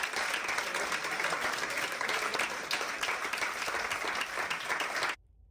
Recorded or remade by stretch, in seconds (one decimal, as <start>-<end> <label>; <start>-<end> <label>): 0.0-3.2 remade; 3.2-4.7 recorded; 4.7-5.5 remade